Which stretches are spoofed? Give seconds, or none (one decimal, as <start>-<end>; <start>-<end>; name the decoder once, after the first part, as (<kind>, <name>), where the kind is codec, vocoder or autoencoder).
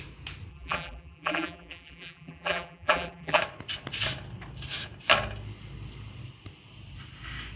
0.5-3.4 (vocoder, BigVGAN v2)